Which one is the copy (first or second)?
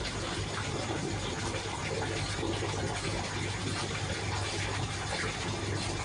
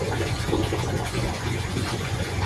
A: second